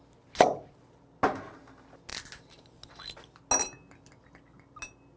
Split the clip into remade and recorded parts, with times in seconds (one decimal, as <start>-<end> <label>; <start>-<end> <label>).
0.0-5.2 recorded

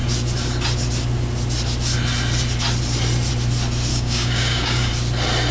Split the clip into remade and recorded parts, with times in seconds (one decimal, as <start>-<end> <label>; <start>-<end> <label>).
0.0-3.9 recorded; 3.9-4.9 remade; 4.9-5.5 recorded

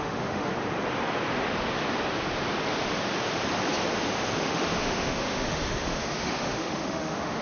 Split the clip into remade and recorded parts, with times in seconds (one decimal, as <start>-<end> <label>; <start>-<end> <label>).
0.0-0.5 remade; 0.5-4.4 recorded; 4.4-7.4 remade

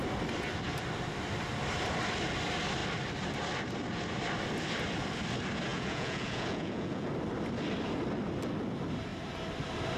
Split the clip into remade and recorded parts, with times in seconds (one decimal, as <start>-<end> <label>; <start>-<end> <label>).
0.0-5.7 recorded; 5.7-7.1 remade; 7.1-10.0 recorded